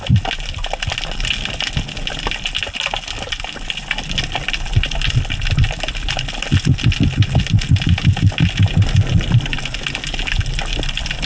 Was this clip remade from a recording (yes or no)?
no